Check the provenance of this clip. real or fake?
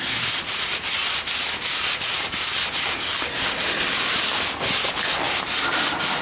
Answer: real